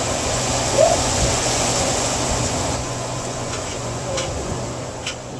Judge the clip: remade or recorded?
remade